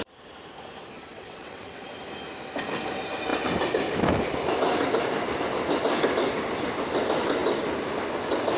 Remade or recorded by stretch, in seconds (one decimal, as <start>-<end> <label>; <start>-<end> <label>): 0.0-1.1 recorded; 1.1-1.9 remade; 1.9-8.6 recorded